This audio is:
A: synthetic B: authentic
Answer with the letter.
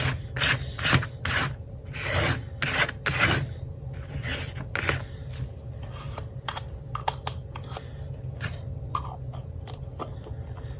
B